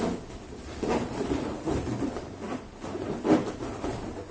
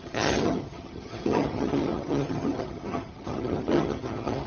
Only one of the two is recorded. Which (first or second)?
first